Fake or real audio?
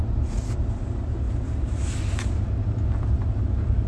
real